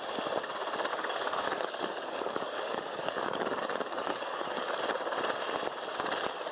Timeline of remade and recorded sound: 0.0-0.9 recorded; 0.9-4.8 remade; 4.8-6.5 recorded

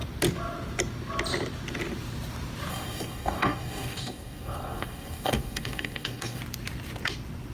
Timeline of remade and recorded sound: 0.0-2.7 recorded; 2.7-6.4 remade; 6.4-7.5 recorded

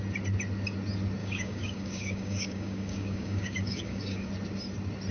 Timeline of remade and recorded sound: 0.0-1.2 recorded; 1.2-4.3 remade; 4.3-5.1 recorded

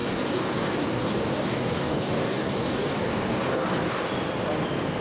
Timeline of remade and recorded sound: 0.0-4.1 remade; 4.1-5.0 recorded

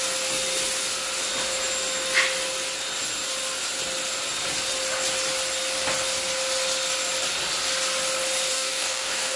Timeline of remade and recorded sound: 0.0-8.5 recorded; 8.5-9.4 remade

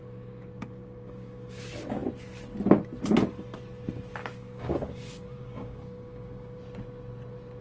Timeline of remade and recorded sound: 0.0-1.6 remade; 1.6-4.2 recorded; 4.2-6.6 remade; 6.6-7.6 recorded

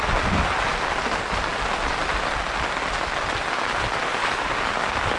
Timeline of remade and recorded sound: 0.0-4.2 recorded; 4.2-4.7 remade; 4.7-5.2 recorded